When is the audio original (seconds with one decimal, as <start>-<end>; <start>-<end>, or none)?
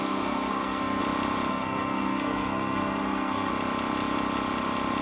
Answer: 1.0-1.5; 3.5-5.0